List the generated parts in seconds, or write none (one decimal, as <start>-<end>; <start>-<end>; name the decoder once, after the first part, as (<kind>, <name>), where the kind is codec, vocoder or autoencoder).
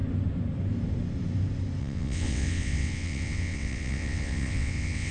1.8-5.1 (vocoder, WaveNeXt)